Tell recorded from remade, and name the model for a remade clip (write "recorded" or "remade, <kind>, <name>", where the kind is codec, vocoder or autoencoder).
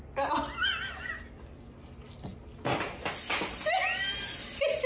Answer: recorded